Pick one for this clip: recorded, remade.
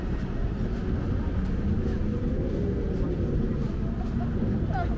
recorded